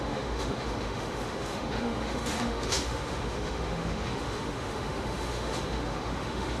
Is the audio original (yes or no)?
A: no